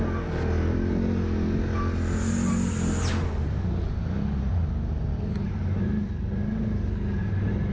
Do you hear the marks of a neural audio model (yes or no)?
no